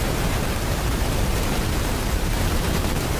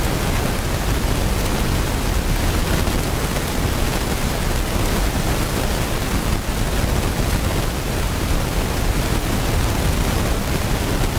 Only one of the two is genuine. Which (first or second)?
second